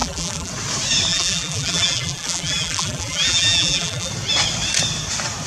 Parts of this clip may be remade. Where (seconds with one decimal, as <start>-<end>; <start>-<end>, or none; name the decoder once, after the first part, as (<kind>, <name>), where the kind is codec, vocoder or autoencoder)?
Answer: 0.0-0.5 (vocoder, BigVGAN v2); 1.1-4.1